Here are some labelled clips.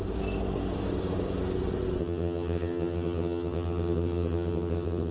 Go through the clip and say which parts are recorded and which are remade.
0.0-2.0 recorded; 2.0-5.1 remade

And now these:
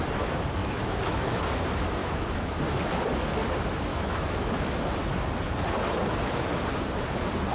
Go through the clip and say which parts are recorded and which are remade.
0.0-0.6 recorded; 0.6-1.4 remade; 1.4-2.0 recorded; 2.0-2.6 remade; 2.6-3.9 recorded; 3.9-4.5 remade; 4.5-7.5 recorded

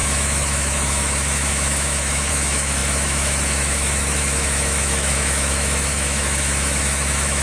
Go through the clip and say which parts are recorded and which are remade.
0.0-7.4 remade

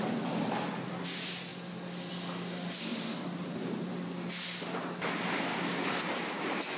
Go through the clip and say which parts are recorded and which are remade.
0.0-5.5 recorded; 5.5-6.3 remade; 6.3-6.8 recorded

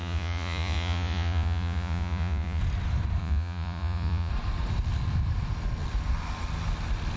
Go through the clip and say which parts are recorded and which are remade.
0.0-2.6 remade; 2.6-3.2 recorded; 3.2-4.3 remade; 4.3-7.2 recorded

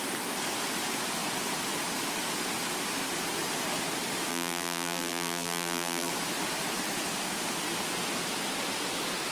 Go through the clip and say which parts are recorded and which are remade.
0.0-4.3 recorded; 4.3-6.1 remade; 6.1-9.3 recorded

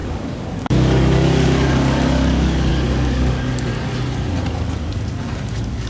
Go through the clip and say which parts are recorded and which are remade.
0.0-3.7 remade; 3.7-5.2 recorded; 5.2-5.9 remade

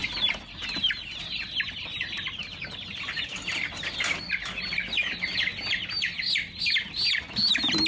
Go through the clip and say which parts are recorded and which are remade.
0.0-4.7 remade; 4.7-7.9 recorded